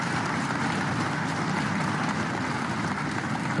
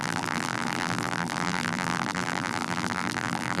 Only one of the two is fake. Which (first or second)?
second